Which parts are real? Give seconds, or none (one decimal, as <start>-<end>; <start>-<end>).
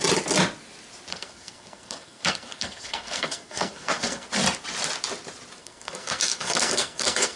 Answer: 0.0-1.1; 4.3-5.6